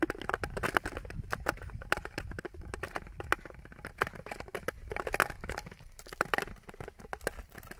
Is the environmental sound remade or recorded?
recorded